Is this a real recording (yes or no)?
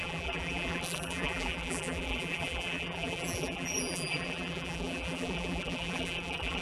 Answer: no